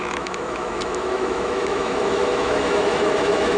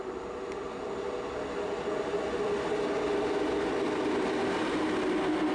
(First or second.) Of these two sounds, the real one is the second